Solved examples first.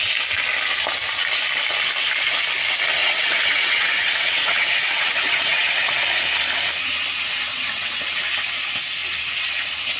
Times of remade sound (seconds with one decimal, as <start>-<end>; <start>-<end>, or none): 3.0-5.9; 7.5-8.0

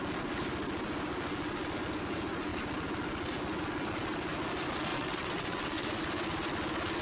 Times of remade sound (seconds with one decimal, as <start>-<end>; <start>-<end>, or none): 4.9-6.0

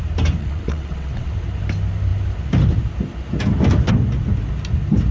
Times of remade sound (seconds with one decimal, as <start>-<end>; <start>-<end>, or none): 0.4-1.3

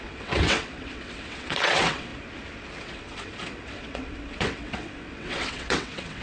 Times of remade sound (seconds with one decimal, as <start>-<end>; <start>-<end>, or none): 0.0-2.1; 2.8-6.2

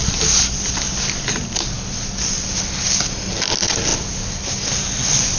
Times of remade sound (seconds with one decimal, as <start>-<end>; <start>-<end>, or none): none

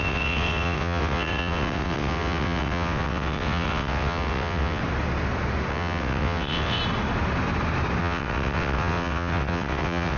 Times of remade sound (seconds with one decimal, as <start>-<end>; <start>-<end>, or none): 0.0-4.8; 5.7-6.8; 8.0-10.2

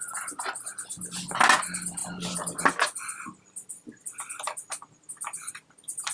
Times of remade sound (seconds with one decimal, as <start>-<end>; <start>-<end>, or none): none